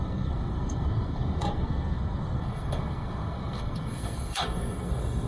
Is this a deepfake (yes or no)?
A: yes